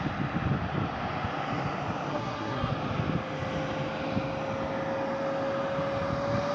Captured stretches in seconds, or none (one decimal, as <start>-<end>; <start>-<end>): 0.0-2.1; 2.7-6.5